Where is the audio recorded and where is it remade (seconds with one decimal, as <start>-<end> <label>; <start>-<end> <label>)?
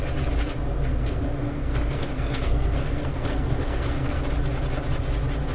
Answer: 0.0-0.9 recorded; 0.9-4.2 remade; 4.2-5.5 recorded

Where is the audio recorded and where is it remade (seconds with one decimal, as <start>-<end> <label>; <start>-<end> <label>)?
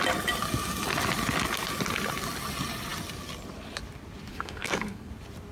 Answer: 0.0-4.3 recorded; 4.3-5.1 remade; 5.1-5.5 recorded